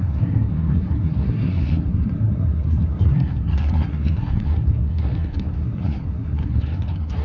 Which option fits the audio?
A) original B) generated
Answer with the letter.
B